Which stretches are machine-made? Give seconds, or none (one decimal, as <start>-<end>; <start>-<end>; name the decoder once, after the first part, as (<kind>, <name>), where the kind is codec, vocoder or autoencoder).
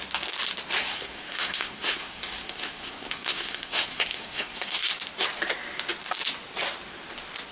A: 0.8-4.9 (codec, SNAC)